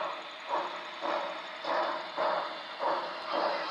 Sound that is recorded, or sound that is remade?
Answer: recorded